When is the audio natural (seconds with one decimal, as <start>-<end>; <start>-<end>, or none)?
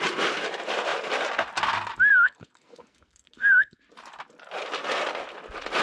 0.0-2.1; 3.8-5.8